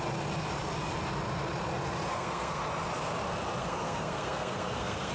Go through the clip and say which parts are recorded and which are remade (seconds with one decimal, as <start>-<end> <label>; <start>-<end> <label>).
0.0-2.1 recorded; 2.1-2.6 remade; 2.6-3.6 recorded; 3.6-5.1 remade